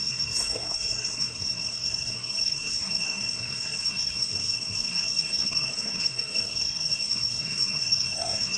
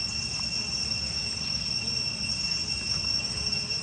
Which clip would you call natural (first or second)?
second